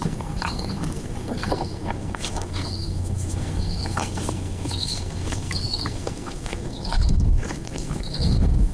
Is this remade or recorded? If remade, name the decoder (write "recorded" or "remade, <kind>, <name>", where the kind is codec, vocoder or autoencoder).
remade, codec, SNAC